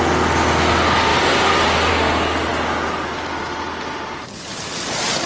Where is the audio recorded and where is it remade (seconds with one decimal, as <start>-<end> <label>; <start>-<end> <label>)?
0.0-4.5 recorded; 4.5-5.3 remade